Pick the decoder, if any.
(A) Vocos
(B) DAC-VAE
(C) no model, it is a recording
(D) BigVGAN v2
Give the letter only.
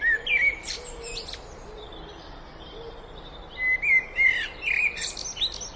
C